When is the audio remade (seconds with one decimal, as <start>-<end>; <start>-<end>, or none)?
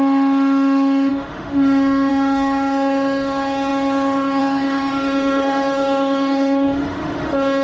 0.0-7.6